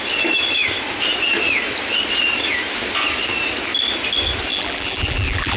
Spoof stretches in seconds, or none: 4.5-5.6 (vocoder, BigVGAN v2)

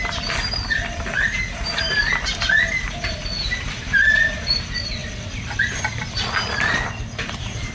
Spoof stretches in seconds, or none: 5.0-7.7 (vocoder, BigVGAN v2)

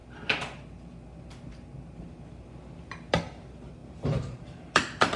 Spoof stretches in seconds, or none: 3.8-4.7 (vocoder, BigVGAN v2)

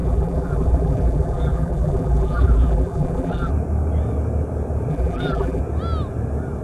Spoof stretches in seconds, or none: 0.0-3.5 (vocoder, BigVGAN v2); 4.9-5.6

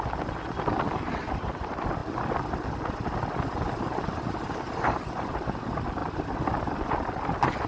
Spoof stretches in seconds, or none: none